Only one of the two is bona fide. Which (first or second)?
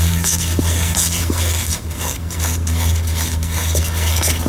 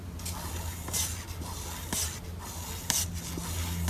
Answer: second